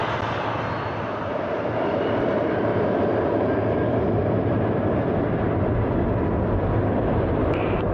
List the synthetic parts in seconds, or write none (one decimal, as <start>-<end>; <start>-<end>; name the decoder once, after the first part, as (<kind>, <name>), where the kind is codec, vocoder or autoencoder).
1.2-2.7 (vocoder, BigVGAN v2); 7.4-7.9